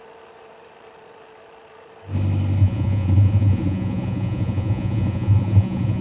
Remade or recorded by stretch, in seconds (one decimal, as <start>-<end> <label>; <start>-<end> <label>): 0.0-2.6 recorded; 2.6-6.0 remade